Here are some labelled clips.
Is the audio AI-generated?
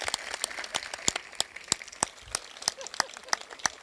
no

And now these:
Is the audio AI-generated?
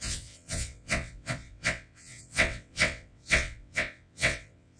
yes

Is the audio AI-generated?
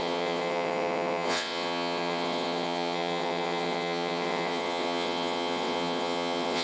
yes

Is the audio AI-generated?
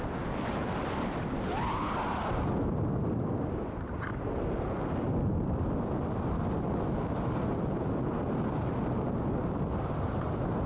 no